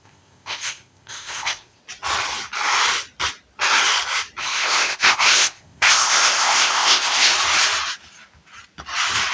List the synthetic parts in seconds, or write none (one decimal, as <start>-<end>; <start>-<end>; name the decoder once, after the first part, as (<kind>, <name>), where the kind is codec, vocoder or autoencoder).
0.0-1.8 (codec, ZipCodec); 4.4-7.3